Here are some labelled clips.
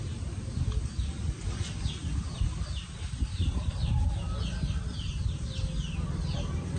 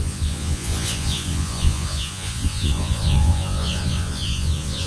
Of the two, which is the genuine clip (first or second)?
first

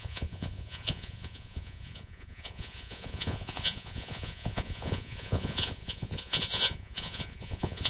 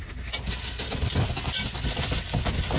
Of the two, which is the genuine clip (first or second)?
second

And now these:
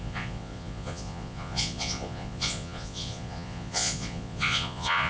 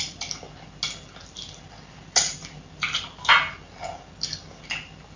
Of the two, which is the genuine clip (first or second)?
second